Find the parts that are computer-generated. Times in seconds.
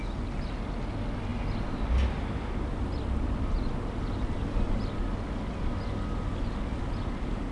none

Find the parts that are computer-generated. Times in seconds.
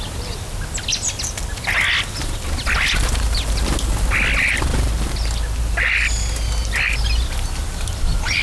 none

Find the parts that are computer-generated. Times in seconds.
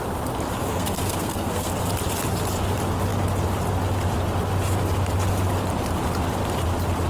0.7-1.7 (codec, SNAC)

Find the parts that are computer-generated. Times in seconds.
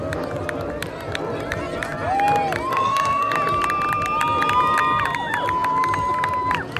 2.7-3.3 (codec, SNAC)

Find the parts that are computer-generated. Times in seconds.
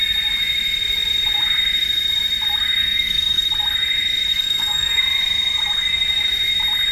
2.8-3.5 (codec, SNAC); 4.3-5.0